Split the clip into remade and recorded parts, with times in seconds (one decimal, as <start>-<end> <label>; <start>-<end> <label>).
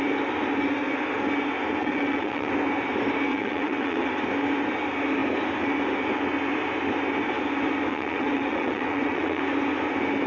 0.0-1.8 recorded; 1.8-2.5 remade; 2.5-3.3 recorded; 3.3-4.1 remade; 4.1-7.9 recorded; 7.9-9.4 remade; 9.4-10.3 recorded